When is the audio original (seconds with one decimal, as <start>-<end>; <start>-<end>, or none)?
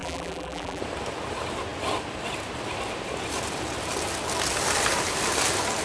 0.8-5.8